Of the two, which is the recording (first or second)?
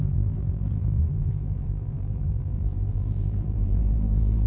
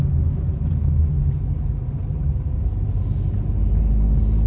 second